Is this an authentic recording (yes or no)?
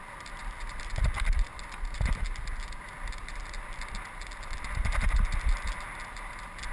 yes